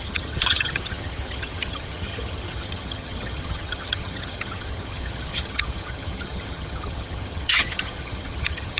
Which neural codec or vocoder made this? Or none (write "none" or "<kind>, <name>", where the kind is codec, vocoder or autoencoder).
vocoder, HiFi-GAN